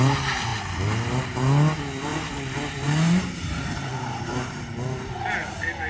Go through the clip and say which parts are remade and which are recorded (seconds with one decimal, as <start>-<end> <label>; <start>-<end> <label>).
0.0-2.1 recorded; 2.1-5.1 remade; 5.1-5.9 recorded